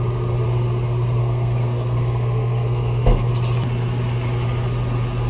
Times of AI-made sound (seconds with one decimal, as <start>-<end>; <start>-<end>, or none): 1.2-3.3